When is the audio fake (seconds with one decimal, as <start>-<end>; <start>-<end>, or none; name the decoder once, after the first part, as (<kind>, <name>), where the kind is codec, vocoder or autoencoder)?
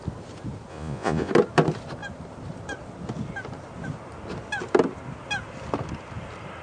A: 0.7-1.3 (vocoder, Vocos)